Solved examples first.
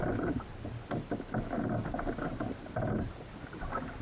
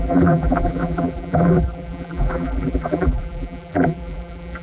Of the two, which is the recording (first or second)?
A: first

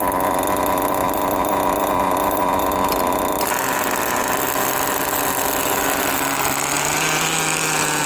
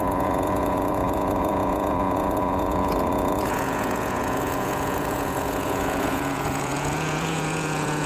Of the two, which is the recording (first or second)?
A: first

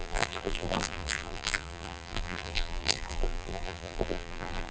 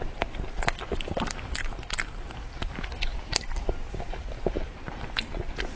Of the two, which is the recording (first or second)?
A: second